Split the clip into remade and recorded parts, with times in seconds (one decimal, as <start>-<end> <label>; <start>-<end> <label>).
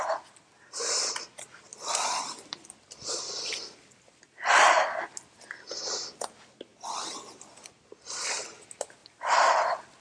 0.0-1.7 recorded; 1.7-4.5 remade; 4.5-6.7 recorded; 6.7-8.4 remade; 8.4-9.0 recorded; 9.0-10.0 remade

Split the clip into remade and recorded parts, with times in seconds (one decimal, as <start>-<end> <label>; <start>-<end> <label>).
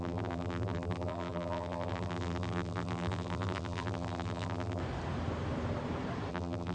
0.0-4.8 remade; 4.8-6.3 recorded; 6.3-6.7 remade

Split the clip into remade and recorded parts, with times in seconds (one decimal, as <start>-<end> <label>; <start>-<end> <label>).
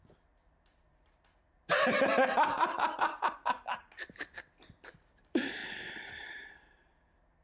0.0-5.6 remade; 5.6-6.2 recorded; 6.2-7.4 remade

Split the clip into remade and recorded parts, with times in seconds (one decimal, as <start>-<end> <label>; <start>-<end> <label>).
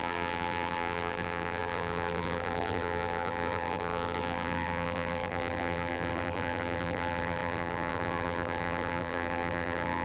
0.0-10.0 remade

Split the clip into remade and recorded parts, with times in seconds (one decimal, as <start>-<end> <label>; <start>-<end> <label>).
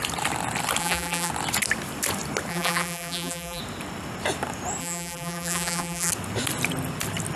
0.0-0.8 recorded; 0.8-1.3 remade; 1.3-2.5 recorded; 2.5-3.6 remade; 3.6-4.8 recorded; 4.8-6.1 remade; 6.1-7.3 recorded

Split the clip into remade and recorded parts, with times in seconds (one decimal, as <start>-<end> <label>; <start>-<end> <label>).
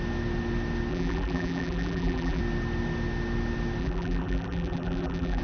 0.0-0.9 recorded; 0.9-2.4 remade; 2.4-3.8 recorded; 3.8-5.4 remade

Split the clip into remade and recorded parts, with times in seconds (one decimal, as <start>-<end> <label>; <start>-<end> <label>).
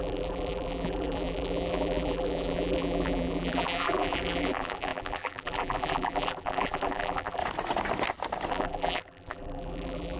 0.0-7.4 remade; 7.4-8.5 recorded; 8.5-10.2 remade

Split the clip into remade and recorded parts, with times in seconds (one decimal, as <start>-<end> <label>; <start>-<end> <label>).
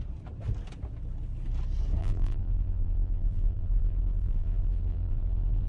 0.0-2.0 recorded; 2.0-5.7 remade